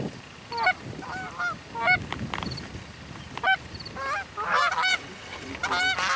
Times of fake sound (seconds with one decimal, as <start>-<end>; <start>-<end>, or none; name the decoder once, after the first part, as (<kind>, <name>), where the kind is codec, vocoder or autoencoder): 4.9-5.5 (vocoder, WaveNeXt)